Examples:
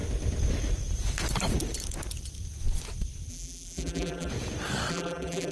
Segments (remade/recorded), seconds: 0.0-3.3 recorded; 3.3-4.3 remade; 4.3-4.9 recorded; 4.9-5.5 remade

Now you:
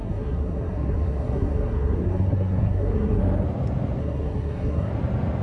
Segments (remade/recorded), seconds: 0.0-3.2 remade; 3.2-4.0 recorded; 4.0-4.9 remade; 4.9-5.4 recorded

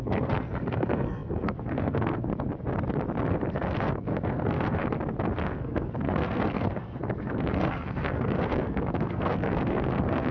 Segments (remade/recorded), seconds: 0.0-2.3 remade; 2.3-3.5 recorded; 3.5-4.8 remade; 4.8-5.4 recorded; 5.4-10.3 remade

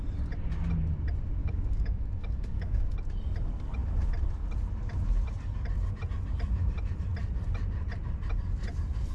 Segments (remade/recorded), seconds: 0.0-1.4 recorded; 1.4-2.8 remade; 2.8-9.1 recorded

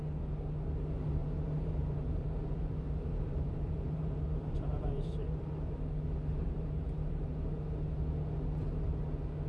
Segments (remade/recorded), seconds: 0.0-1.2 recorded; 1.2-5.3 remade; 5.3-6.4 recorded; 6.4-7.1 remade; 7.1-9.5 recorded